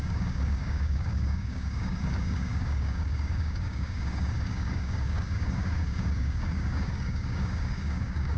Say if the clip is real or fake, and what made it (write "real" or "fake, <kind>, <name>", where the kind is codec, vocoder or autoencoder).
fake, codec, DAC